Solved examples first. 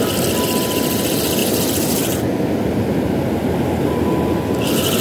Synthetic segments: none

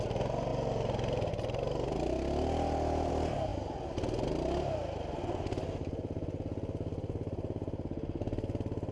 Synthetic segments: 0.5-3.1 (vocoder, BigVGAN v2)

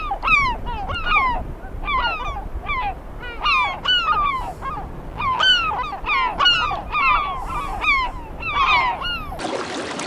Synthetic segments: 5.1-5.7 (vocoder, BigVGAN v2)

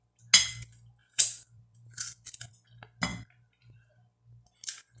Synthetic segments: 1.0-2.5 (vocoder, BigVGAN v2); 3.1-3.9

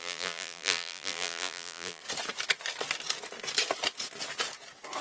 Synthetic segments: 0.0-2.0 (vocoder, BigVGAN v2)

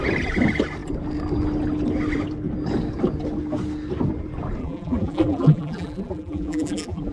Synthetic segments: 4.6-7.1 (vocoder, BigVGAN v2)

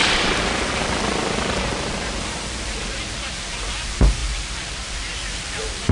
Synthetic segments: 0.0-5.9 (vocoder, BigVGAN v2)

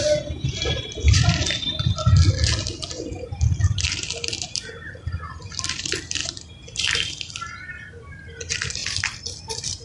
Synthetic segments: none